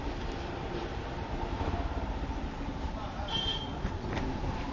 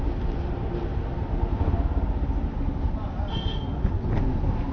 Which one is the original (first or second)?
second